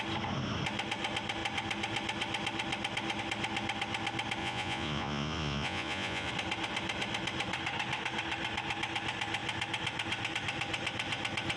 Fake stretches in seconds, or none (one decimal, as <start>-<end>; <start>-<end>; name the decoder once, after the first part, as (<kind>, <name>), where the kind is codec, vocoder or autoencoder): 4.4-6.3 (vocoder, Vocos)